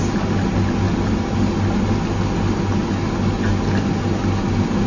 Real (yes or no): yes